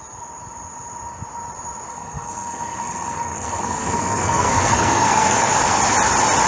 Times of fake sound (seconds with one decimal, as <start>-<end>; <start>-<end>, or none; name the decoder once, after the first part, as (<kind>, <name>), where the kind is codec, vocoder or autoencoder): 1.9-5.8 (codec, SNAC)